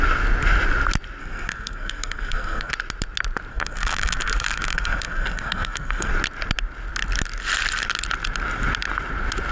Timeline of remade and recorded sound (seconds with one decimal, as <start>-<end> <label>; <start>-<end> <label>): 0.0-1.2 recorded; 1.2-2.7 remade; 2.7-3.5 recorded; 3.5-6.1 remade; 6.1-9.5 recorded